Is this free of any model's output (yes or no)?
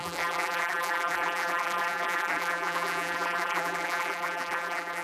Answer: no